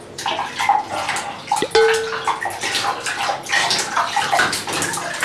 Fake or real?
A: real